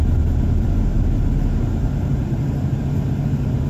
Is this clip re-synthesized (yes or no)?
no